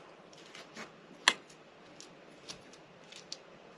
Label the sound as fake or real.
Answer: real